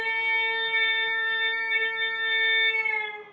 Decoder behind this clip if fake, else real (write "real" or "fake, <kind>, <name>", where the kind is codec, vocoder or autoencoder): real